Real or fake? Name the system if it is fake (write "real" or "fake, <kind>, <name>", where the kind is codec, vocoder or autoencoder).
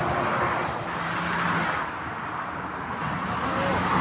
real